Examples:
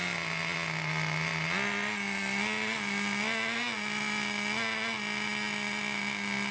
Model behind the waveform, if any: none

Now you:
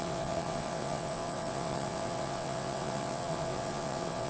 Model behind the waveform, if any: vocoder, WaveNeXt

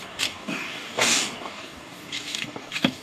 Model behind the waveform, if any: codec, DAC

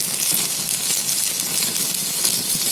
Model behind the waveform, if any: none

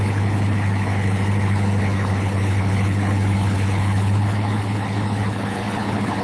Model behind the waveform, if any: codec, HILCodec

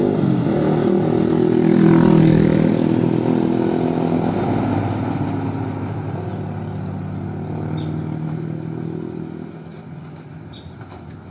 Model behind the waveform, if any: none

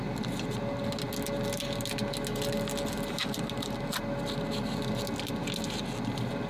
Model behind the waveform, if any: none